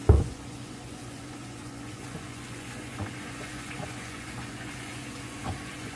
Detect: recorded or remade remade